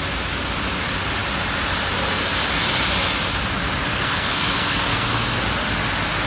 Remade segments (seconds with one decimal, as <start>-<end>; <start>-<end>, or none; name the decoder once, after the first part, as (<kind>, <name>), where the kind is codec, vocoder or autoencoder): 3.9-5.4 (codec, SNAC)